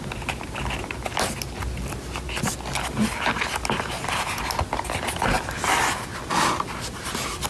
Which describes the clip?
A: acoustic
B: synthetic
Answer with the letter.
A